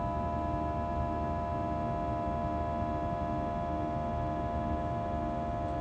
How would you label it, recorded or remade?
recorded